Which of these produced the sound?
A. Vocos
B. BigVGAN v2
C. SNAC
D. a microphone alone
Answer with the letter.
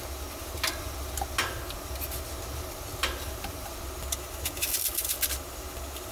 D